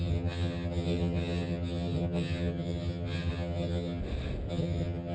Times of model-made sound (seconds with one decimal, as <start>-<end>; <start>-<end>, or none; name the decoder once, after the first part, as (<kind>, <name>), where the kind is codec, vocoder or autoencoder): 0.0-4.0 (vocoder, HiFi-GAN); 4.5-5.1

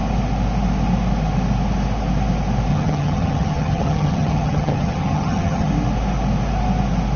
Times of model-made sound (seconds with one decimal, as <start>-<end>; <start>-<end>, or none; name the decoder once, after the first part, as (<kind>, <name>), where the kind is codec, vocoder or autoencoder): 2.7-5.7 (vocoder, HiFi-GAN)

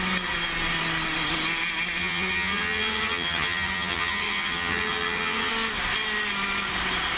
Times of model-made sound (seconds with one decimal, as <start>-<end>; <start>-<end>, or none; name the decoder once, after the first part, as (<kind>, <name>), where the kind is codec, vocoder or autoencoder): 2.0-5.5 (vocoder, HiFi-GAN)

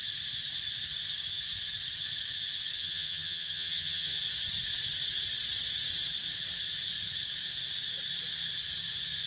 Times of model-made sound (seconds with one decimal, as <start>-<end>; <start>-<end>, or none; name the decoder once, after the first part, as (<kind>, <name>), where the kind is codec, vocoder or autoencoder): 2.8-4.2 (vocoder, HiFi-GAN)